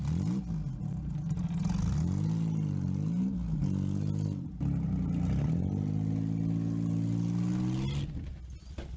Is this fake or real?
real